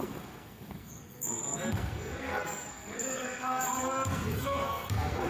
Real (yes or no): no